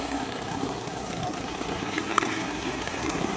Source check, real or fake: fake